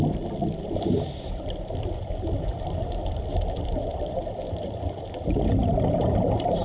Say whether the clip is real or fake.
fake